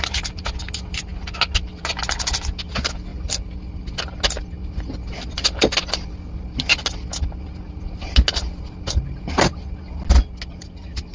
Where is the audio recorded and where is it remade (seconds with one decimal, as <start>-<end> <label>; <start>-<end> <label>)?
0.0-11.1 recorded